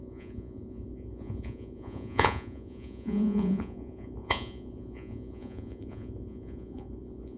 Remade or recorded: remade